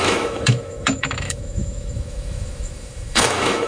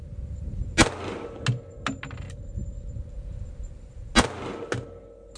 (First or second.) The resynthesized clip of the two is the first